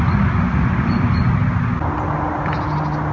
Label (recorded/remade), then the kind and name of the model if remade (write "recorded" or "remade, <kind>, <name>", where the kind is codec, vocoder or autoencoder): recorded